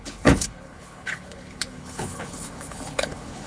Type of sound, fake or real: fake